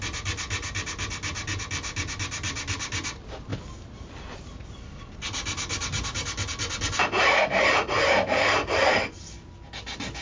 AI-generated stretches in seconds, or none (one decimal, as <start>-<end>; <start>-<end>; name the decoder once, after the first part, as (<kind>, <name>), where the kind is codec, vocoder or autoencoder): none